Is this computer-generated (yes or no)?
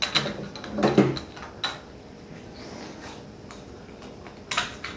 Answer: no